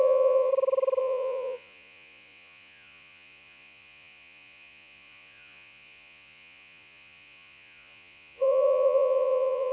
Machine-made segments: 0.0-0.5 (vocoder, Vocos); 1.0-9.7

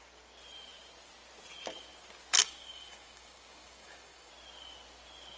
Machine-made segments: 2.4-4.3 (codec, DAC)

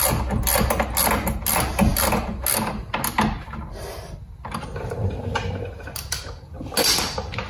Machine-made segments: none

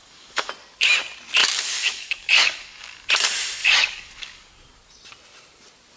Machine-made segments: 0.0-0.5 (codec, DAC); 1.4-3.1; 3.6-4.5

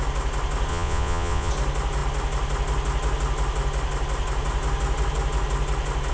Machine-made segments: 0.7-1.5 (vocoder, Vocos)

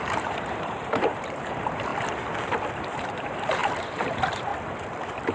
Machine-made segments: 0.0-1.9 (vocoder, BigVGAN v2); 2.8-4.5